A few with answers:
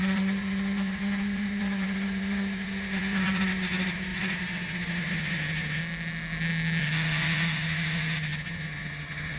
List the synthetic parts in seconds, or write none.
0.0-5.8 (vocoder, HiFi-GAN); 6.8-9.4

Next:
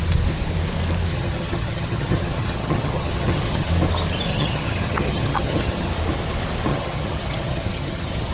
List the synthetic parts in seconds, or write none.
1.1-3.7 (vocoder, HiFi-GAN); 4.3-5.9; 6.7-8.3